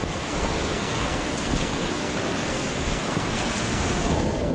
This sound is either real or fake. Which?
fake